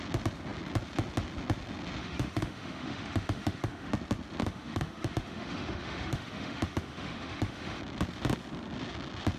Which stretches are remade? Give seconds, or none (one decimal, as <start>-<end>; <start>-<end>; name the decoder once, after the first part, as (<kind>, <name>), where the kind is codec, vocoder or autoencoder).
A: 2.0-3.9 (autoencoder, DAC-VAE); 4.4-7.8